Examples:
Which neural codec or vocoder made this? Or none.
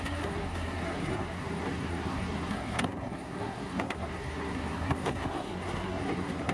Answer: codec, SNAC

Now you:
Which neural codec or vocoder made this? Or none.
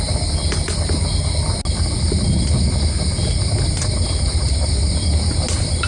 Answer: none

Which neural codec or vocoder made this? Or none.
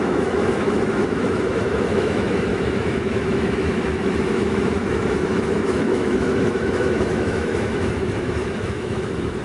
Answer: autoencoder, DAC-VAE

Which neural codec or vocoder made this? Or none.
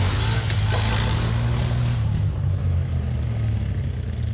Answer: none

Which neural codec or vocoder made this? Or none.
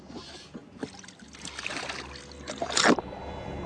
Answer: none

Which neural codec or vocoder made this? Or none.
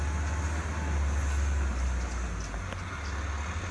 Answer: none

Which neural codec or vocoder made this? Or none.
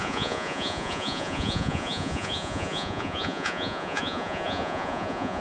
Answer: vocoder, Vocos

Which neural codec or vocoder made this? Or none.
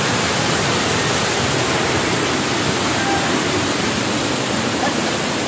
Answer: none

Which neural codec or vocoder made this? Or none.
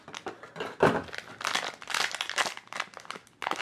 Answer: none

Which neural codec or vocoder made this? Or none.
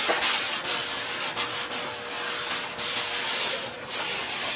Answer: none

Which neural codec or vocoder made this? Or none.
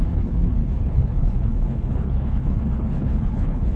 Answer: codec, HILCodec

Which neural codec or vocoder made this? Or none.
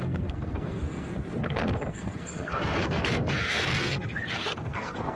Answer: codec, SNAC